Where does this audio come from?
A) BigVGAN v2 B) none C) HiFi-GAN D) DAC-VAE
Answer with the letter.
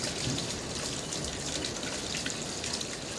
B